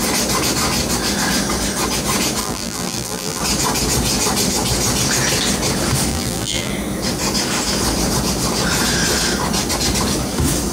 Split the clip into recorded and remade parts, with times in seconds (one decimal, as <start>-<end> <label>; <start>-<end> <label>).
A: 0.0-2.4 recorded; 2.4-3.4 remade; 3.4-6.1 recorded; 6.1-6.7 remade; 6.7-10.7 recorded